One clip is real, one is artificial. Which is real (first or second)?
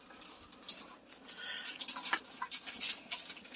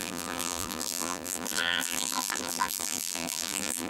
first